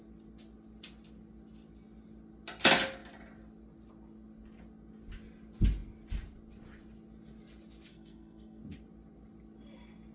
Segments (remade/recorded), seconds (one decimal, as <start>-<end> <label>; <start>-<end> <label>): 0.0-7.9 recorded; 7.9-8.6 remade; 8.6-10.1 recorded